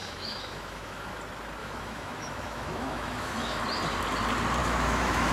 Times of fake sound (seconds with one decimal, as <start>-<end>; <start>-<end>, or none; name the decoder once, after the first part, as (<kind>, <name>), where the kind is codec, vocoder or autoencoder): 0.0-1.2 (autoencoder, DAC-VAE); 1.6-3.6; 4.6-5.3